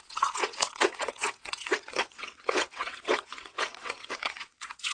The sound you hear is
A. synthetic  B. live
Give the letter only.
A